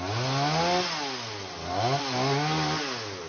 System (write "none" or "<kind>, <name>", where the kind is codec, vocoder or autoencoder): none